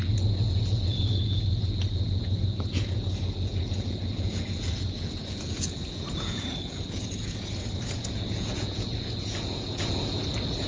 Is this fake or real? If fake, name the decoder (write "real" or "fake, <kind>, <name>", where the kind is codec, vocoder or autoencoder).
fake, vocoder, Vocos